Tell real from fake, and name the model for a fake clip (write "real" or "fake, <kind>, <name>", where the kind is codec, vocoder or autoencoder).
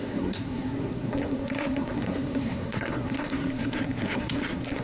fake, codec, SNAC